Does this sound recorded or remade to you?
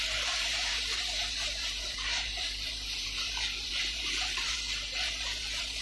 remade